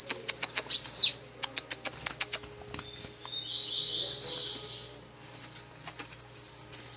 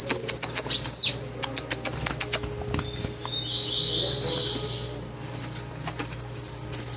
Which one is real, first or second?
first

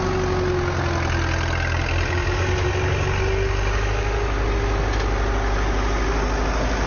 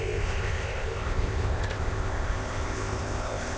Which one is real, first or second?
first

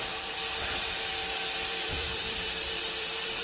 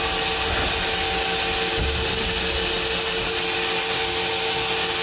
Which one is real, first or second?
second